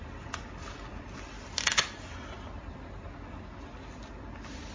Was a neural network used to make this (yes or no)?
no